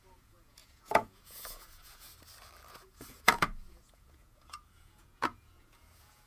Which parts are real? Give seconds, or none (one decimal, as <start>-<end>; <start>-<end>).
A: 2.1-2.7